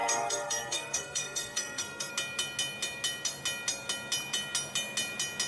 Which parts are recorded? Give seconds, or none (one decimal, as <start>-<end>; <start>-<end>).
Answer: 2.1-5.5